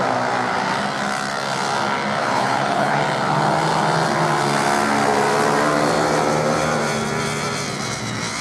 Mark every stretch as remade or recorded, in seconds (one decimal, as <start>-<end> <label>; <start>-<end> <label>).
0.0-2.2 recorded; 2.2-3.0 remade; 3.0-8.4 recorded